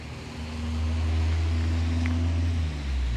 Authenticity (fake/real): real